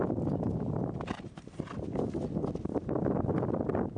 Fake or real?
real